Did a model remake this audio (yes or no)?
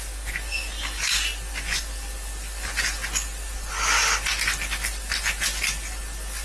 no